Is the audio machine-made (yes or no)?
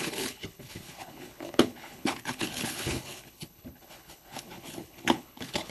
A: yes